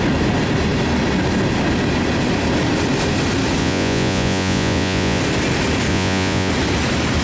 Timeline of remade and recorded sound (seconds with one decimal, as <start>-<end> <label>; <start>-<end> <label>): 0.0-3.6 recorded; 3.6-5.2 remade; 5.2-5.9 recorded; 5.9-6.5 remade; 6.5-7.2 recorded